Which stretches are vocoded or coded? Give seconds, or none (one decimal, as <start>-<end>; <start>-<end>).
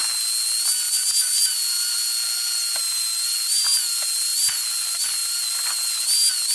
none